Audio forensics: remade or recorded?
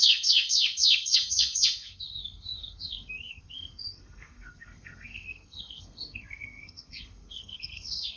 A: remade